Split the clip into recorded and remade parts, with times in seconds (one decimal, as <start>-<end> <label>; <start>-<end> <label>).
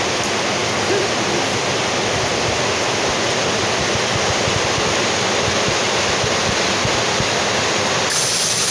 0.0-8.7 recorded